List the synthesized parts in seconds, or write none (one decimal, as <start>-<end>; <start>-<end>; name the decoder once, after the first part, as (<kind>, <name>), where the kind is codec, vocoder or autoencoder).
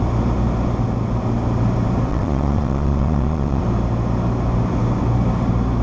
2.1-3.6 (vocoder, Vocos)